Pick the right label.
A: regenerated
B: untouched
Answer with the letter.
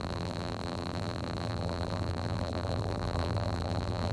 A